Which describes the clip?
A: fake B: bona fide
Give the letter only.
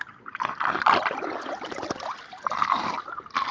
B